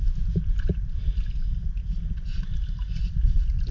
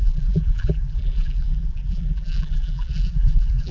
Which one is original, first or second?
first